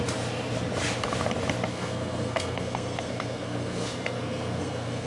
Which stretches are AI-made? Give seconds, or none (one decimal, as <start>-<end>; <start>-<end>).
1.7-5.1

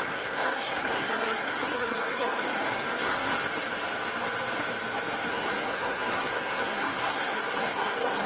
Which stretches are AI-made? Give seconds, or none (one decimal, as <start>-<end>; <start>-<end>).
0.0-3.3; 5.3-8.3

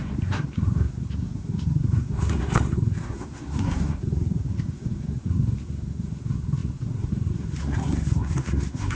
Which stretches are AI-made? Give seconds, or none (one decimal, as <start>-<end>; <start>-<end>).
0.0-9.0

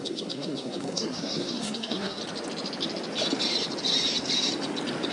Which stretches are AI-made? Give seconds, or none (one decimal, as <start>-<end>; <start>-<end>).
0.0-2.2

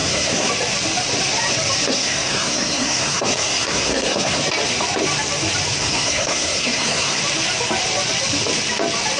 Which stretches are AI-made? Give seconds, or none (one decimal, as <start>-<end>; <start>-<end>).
0.0-0.5; 1.9-4.4; 5.8-7.2

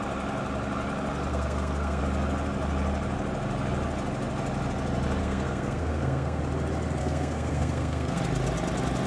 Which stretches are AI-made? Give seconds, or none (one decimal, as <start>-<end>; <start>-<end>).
1.3-2.0; 5.2-6.4; 7.0-8.2

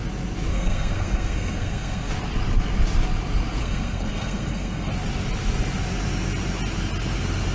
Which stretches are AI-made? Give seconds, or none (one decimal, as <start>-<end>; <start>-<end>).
0.5-2.1; 3.6-4.9